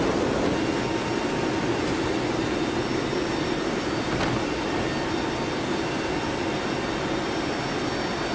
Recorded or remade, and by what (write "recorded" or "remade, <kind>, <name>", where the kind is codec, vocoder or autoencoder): recorded